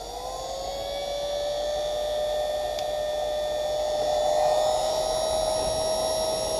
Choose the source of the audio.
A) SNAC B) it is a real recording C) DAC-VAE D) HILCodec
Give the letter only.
B